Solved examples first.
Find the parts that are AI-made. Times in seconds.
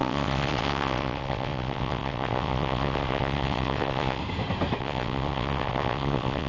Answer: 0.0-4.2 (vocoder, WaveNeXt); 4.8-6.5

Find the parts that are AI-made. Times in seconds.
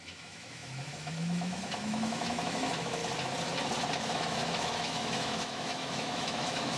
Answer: 0.0-3.0 (autoencoder, DAC-VAE); 4.0-6.8